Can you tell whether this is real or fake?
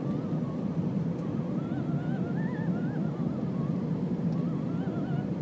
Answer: fake